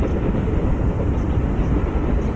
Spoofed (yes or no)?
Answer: no